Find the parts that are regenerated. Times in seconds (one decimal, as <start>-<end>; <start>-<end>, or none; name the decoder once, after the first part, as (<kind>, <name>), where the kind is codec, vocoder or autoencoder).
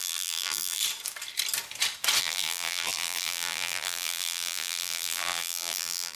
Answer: 0.0-0.8 (vocoder, BigVGAN v2); 2.2-6.2